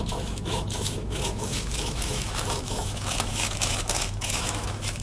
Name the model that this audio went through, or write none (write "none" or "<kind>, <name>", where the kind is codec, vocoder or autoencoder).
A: autoencoder, DAC-VAE